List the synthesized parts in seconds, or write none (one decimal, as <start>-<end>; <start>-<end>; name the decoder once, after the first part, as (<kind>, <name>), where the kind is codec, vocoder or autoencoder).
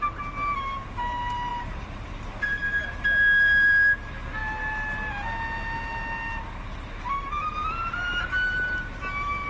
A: 1.5-3.7 (vocoder, BigVGAN v2)